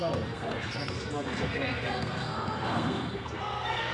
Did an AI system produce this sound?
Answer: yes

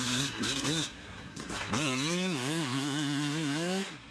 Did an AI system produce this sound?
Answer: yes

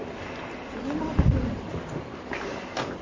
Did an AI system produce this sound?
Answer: no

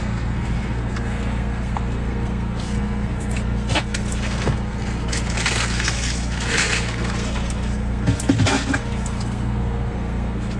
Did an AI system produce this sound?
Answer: yes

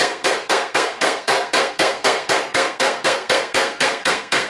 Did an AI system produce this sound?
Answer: yes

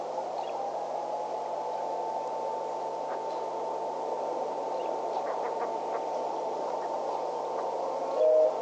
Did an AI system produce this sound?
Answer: no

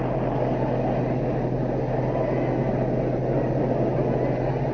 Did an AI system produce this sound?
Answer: no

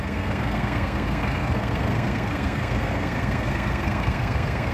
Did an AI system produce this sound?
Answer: yes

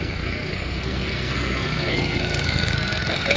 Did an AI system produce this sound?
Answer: yes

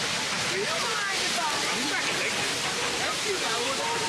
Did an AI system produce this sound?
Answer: no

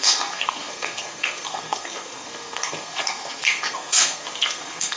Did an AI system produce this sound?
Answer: yes